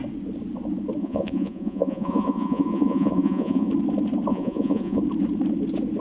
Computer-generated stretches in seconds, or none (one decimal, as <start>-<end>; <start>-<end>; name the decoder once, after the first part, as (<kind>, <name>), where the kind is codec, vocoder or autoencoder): 1.0-3.7 (vocoder, Vocos); 4.3-5.0